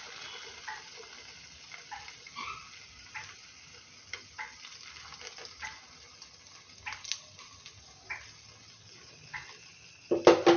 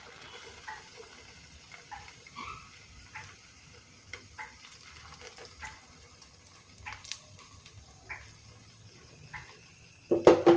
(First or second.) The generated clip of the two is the second